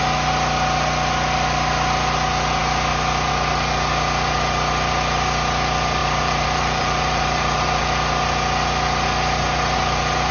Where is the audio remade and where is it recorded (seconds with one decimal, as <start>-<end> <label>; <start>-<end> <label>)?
0.0-6.0 recorded; 6.0-7.8 remade; 7.8-10.3 recorded